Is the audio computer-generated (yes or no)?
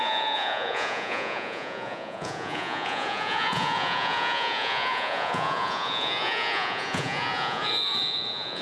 yes